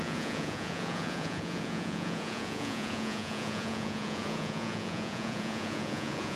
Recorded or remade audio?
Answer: remade